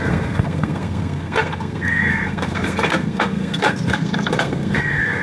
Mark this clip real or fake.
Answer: fake